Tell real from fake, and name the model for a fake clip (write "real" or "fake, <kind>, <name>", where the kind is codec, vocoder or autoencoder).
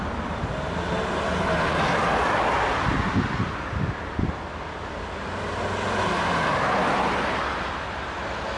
real